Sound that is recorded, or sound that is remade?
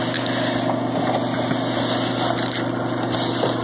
recorded